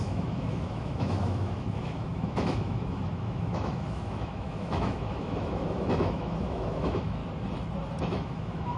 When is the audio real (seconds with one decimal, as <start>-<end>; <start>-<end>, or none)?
7.2-8.0